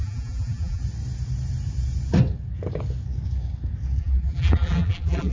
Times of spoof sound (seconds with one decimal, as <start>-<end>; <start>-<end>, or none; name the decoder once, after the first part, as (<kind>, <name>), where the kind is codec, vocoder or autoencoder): 0.0-0.8 (vocoder, BigVGAN v2); 4.0-5.3